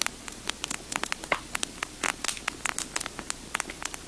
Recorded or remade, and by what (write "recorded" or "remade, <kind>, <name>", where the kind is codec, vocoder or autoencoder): recorded